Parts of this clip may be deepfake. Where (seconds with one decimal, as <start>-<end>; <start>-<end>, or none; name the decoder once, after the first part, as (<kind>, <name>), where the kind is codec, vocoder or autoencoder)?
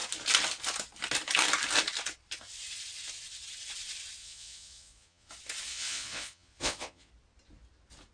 4.2-5.3 (vocoder, Vocos); 5.7-7.1